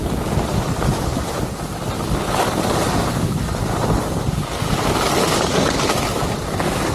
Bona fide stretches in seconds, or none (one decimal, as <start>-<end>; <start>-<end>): 0.0-1.1; 1.8-6.9